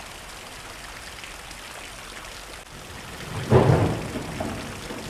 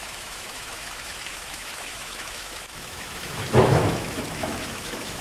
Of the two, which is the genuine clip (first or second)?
first